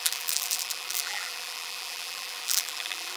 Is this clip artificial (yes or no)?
yes